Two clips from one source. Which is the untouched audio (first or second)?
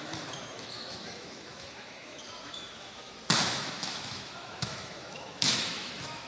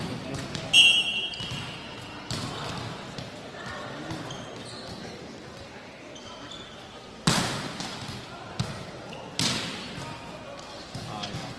second